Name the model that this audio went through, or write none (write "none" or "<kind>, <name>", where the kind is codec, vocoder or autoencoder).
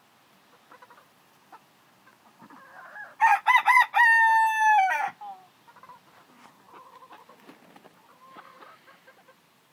none